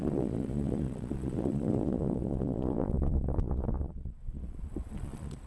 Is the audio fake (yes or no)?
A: yes